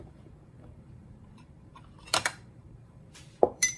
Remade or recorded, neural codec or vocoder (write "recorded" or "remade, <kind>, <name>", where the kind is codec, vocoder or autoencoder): remade, vocoder, BigVGAN v2